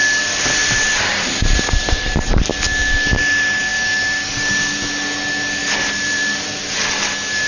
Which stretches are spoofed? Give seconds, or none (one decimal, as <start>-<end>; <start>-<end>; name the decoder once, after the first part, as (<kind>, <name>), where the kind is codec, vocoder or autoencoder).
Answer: 0.6-2.5 (vocoder, BigVGAN v2); 5.6-6.8